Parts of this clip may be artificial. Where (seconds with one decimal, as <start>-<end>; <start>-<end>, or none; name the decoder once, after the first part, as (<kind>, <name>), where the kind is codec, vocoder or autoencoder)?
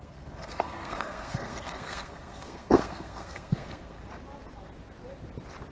0.0-4.0 (codec, SNAC)